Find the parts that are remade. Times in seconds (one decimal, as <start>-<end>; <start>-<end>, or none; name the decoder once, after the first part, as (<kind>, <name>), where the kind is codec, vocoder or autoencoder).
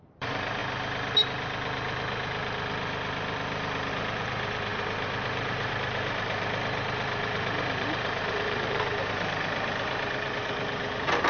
0.0-0.6 (vocoder, BigVGAN v2); 3.9-11.3